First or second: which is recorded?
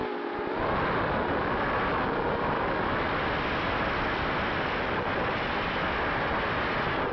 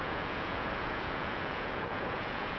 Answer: first